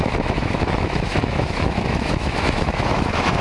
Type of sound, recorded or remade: remade